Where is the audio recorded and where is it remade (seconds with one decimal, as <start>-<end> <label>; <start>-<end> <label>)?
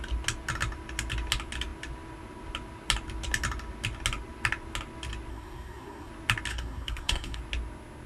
0.0-5.3 recorded; 5.3-6.1 remade; 6.1-6.5 recorded; 6.5-7.4 remade; 7.4-8.1 recorded